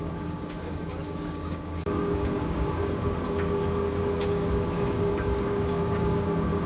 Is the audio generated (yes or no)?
yes